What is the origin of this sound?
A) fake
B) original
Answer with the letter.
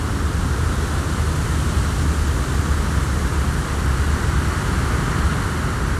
B